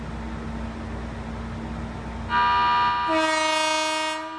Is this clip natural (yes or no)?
yes